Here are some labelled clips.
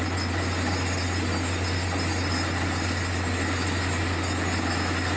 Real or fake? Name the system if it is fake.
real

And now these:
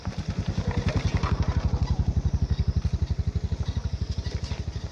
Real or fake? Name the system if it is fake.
real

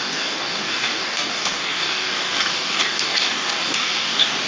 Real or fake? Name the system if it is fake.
fake, codec, DAC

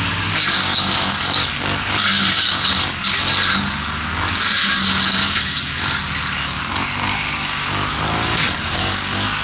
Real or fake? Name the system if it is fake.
fake, codec, DAC